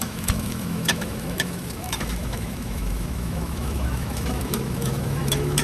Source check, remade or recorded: remade